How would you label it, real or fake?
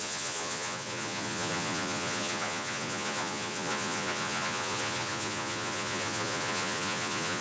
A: fake